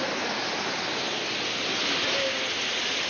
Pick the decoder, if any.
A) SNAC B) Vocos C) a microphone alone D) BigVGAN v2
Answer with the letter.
C